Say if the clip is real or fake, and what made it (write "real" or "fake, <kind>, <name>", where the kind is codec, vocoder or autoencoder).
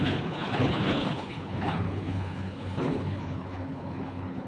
fake, codec, HILCodec